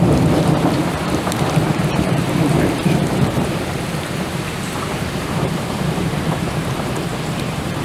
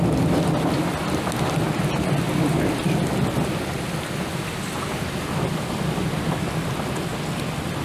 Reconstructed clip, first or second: first